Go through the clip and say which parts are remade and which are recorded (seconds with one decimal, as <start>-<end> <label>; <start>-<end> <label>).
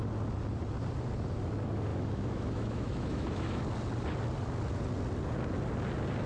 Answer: 0.0-1.9 recorded; 1.9-3.6 remade; 3.6-6.3 recorded